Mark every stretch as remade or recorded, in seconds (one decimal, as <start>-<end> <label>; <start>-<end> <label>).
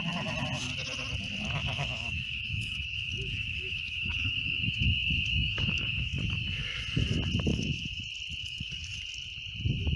0.0-1.6 recorded; 1.6-6.8 remade; 6.8-7.5 recorded; 7.5-8.0 remade; 8.0-8.4 recorded; 8.4-9.0 remade; 9.0-10.0 recorded